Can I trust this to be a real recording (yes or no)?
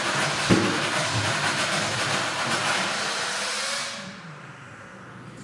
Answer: yes